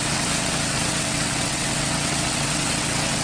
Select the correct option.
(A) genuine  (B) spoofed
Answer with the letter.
B